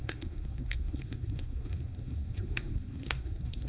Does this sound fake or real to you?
fake